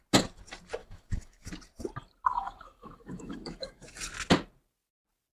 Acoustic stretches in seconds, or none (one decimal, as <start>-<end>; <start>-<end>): 0.0-0.8; 1.5-2.3; 4.0-5.4